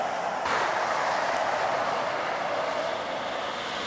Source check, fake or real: real